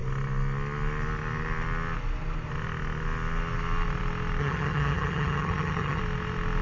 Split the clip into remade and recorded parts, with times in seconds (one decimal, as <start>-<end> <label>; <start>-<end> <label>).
0.0-4.4 recorded; 4.4-6.0 remade; 6.0-6.6 recorded